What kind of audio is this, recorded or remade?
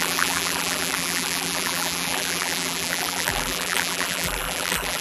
remade